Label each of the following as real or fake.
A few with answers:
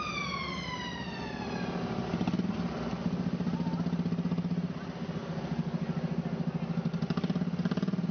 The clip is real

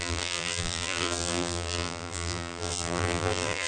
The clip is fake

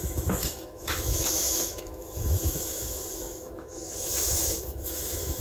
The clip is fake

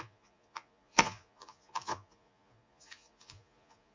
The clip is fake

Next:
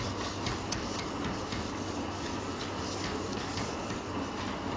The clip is real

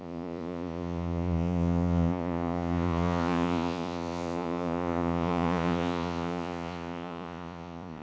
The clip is fake